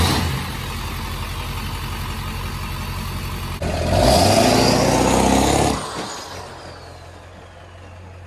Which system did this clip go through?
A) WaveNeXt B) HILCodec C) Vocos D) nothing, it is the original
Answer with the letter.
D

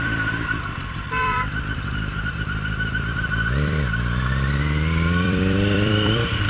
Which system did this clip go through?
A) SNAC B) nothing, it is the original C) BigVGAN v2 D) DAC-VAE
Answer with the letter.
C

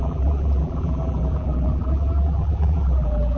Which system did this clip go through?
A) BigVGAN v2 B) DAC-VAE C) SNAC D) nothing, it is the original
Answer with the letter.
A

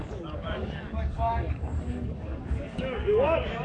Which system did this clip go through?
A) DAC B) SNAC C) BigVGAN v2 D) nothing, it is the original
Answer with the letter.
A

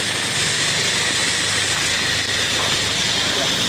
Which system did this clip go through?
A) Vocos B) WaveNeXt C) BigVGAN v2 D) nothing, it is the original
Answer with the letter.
D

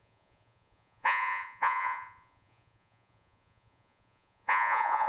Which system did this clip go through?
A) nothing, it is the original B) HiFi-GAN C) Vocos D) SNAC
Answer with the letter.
C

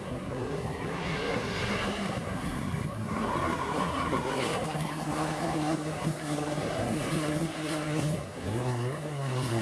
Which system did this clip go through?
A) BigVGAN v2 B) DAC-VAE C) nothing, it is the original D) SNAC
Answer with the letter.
D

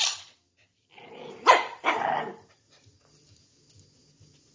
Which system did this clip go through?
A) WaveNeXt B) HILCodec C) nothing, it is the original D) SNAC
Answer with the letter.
C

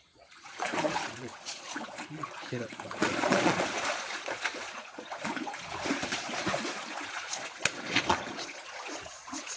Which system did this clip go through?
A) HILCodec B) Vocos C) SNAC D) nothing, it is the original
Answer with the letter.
B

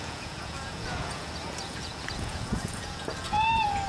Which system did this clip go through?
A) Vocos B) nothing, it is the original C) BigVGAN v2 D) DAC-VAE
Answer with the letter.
A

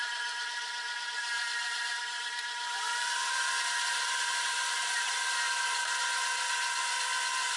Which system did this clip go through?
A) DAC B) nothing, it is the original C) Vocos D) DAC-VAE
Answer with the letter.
B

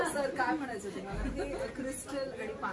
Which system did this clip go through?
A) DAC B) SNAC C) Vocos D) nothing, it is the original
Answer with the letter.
D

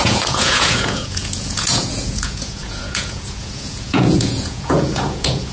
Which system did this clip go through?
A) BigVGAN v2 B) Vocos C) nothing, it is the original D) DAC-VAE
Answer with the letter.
B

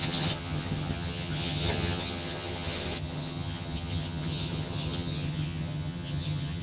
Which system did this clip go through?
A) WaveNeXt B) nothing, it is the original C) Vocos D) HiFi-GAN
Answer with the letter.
D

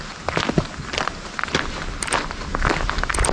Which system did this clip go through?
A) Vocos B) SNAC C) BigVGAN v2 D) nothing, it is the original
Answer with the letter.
D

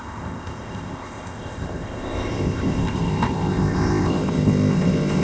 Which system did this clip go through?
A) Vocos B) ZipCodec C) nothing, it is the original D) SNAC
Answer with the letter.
B